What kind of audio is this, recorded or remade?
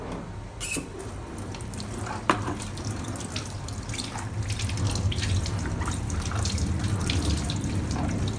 recorded